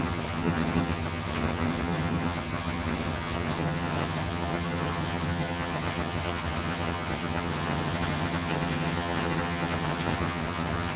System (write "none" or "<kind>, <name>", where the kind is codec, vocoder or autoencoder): vocoder, HiFi-GAN